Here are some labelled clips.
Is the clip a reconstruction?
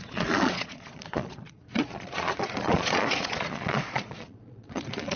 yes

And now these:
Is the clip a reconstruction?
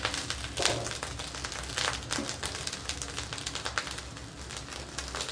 no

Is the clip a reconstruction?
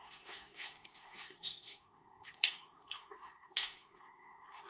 yes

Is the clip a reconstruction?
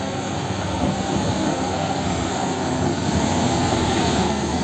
yes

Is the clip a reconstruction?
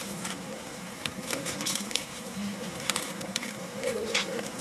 yes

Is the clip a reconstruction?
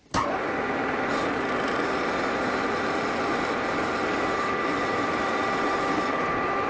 no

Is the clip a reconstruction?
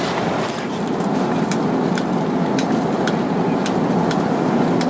no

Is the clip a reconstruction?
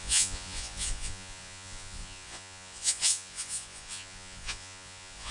yes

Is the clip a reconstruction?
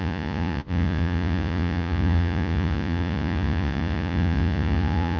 yes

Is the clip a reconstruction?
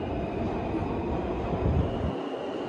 no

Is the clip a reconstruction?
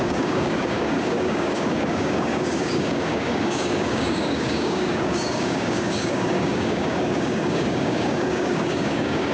yes